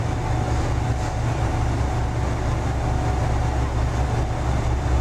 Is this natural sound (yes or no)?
yes